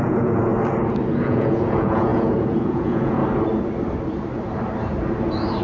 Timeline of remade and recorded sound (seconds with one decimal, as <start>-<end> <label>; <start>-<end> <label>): 0.0-0.5 remade; 0.5-1.2 recorded; 1.2-3.2 remade; 3.2-5.6 recorded